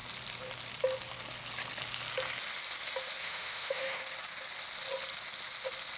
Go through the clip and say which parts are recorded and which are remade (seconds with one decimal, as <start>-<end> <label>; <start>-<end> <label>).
0.0-3.2 recorded; 3.2-4.0 remade; 4.0-6.0 recorded